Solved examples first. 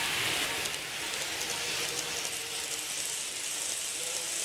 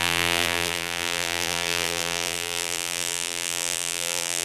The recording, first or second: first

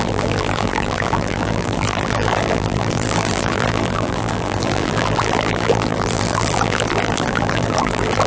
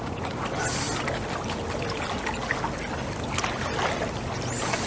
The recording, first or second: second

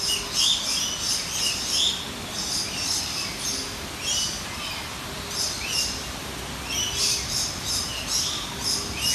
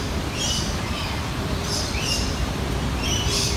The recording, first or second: first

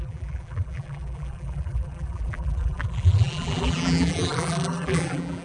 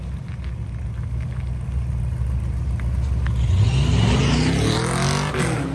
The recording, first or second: second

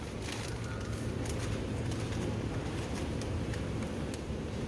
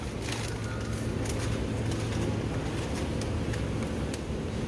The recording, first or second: second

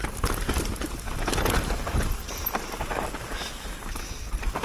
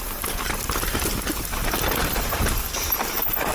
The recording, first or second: first